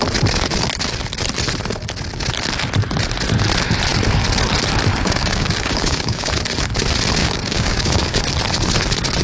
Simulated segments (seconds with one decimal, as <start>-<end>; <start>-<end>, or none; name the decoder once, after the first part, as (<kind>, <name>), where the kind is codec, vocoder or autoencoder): 4.9-6.3 (codec, DAC); 7.2-8.2